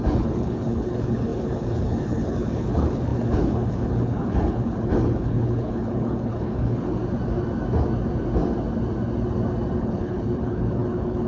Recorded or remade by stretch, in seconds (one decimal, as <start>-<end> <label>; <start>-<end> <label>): 0.0-7.0 remade; 7.0-9.8 recorded; 9.8-11.3 remade